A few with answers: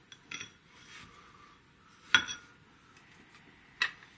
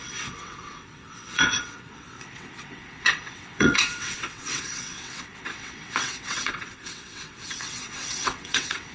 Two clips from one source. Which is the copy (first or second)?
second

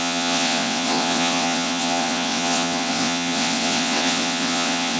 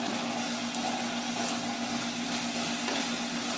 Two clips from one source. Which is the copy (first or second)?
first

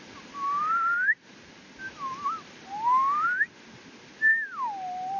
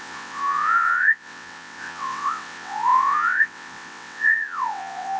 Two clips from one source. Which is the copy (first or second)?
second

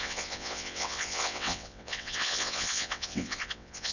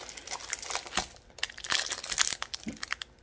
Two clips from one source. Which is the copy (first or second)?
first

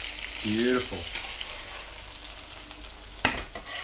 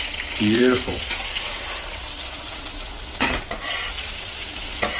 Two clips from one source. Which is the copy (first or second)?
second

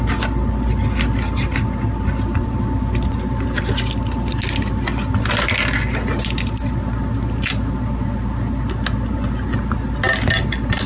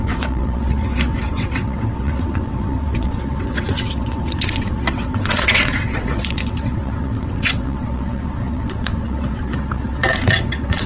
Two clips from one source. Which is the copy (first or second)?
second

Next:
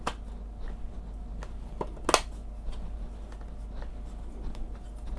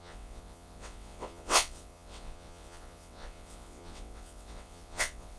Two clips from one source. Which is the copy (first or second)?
second